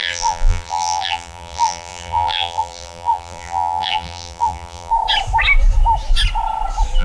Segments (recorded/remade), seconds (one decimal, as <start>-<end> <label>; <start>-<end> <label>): 0.0-4.9 remade; 4.9-7.0 recorded